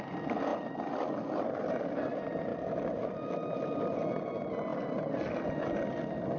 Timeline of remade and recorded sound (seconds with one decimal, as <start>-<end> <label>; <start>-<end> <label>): 0.0-0.5 recorded; 0.5-1.6 remade; 1.6-2.5 recorded; 2.5-4.1 remade; 4.1-6.4 recorded